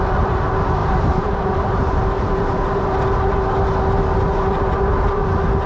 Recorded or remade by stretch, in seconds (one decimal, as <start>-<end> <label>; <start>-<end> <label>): 0.0-0.8 recorded; 0.8-1.8 remade; 1.8-5.7 recorded